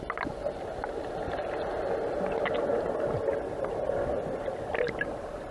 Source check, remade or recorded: recorded